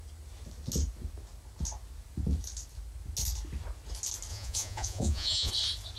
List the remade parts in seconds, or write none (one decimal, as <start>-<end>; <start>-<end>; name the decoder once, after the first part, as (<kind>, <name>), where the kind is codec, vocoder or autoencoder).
4.3-5.5 (vocoder, Vocos)